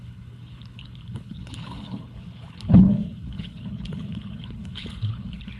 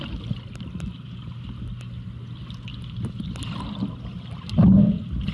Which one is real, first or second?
second